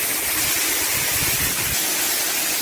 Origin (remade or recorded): recorded